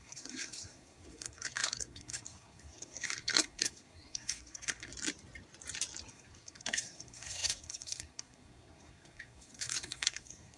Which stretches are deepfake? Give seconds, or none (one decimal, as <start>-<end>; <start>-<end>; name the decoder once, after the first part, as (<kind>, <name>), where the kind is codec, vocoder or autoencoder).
0.0-4.9 (codec, SNAC); 6.1-10.6